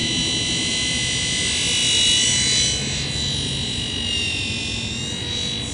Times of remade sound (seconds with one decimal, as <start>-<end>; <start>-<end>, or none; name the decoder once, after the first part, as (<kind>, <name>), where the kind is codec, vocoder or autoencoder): none